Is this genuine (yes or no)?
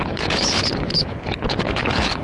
no